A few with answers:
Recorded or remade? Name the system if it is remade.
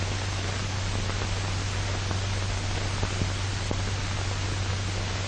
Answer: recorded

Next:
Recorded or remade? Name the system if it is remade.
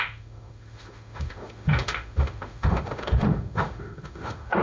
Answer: remade, autoencoder, DAC-VAE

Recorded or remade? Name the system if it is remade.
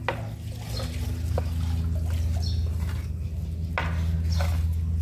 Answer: recorded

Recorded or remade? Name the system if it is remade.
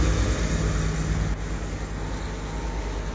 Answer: recorded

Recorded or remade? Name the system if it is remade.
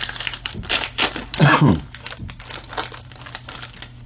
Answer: recorded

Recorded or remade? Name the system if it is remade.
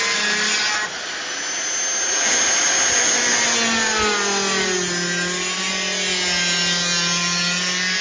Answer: recorded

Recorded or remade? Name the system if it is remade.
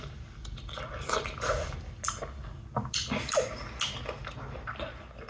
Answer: recorded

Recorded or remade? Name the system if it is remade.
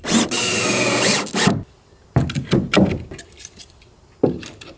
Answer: recorded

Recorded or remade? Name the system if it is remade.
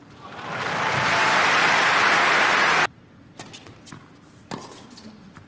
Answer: recorded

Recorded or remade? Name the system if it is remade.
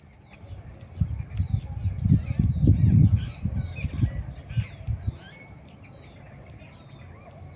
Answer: recorded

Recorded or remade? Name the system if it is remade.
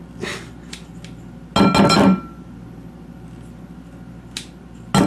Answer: recorded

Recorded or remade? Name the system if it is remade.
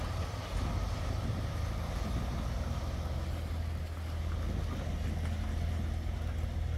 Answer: recorded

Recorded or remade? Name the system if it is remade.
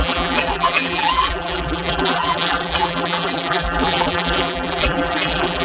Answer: remade, vocoder, BigVGAN v2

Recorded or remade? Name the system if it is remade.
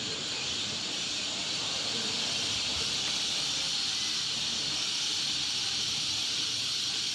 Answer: remade, vocoder, BigVGAN v2